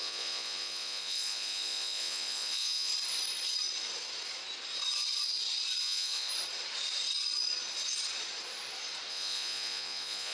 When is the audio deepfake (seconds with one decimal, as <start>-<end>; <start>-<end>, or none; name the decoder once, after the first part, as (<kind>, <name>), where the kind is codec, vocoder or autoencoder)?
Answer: 0.0-2.9 (vocoder, Vocos); 5.8-6.3; 9.1-10.3